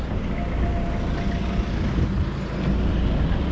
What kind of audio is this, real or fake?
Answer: real